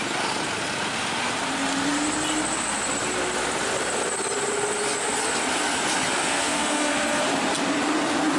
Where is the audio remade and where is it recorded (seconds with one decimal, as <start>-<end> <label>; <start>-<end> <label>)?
0.0-6.3 recorded; 6.3-7.2 remade; 7.2-8.4 recorded